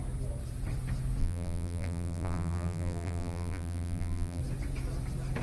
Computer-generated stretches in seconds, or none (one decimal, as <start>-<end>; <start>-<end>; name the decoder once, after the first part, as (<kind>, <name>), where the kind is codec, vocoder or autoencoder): 1.2-4.4 (vocoder, BigVGAN v2)